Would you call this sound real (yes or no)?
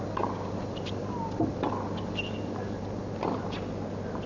yes